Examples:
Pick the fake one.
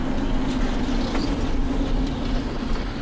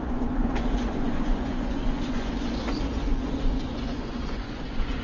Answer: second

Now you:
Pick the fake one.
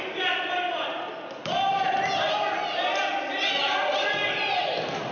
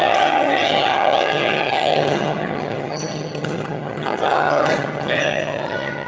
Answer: second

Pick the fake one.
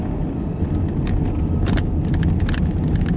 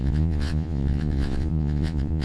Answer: second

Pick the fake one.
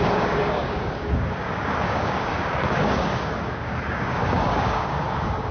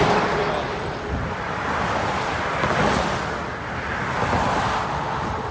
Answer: first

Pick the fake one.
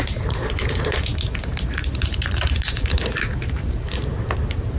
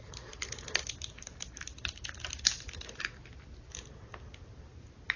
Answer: first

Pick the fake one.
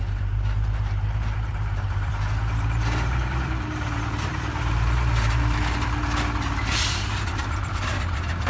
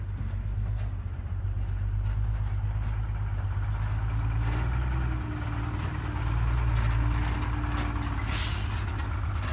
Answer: first